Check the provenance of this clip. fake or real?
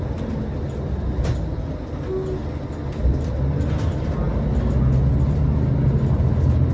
real